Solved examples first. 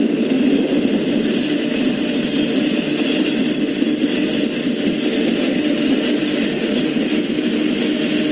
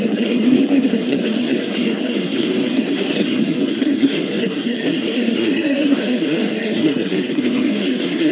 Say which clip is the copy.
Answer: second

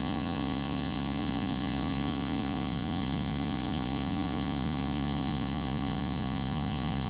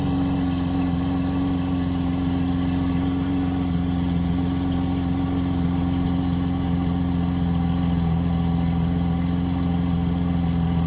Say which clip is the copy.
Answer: first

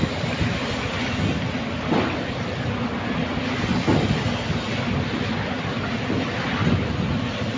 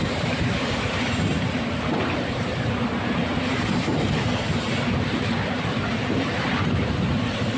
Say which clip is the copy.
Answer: second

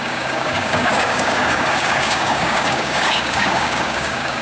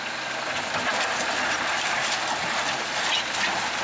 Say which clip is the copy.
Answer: first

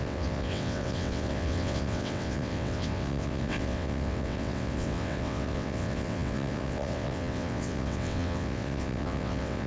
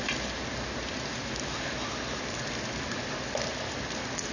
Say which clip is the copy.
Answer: first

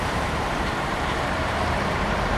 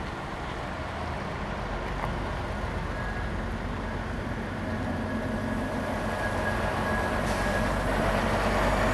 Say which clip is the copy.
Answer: first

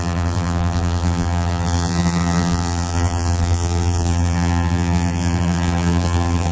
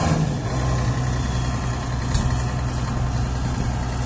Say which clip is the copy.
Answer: first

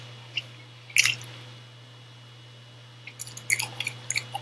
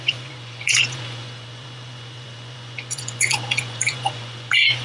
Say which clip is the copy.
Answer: second